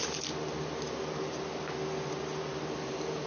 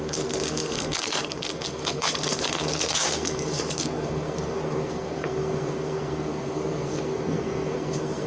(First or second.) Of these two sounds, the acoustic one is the first